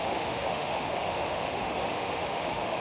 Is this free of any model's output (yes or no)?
no